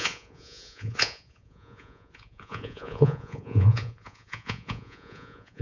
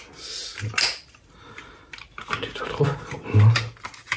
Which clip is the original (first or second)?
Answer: second